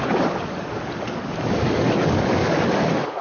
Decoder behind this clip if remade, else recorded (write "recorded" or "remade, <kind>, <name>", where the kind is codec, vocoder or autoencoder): remade, codec, DAC